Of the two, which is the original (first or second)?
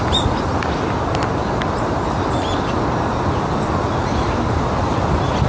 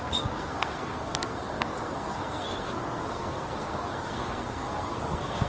first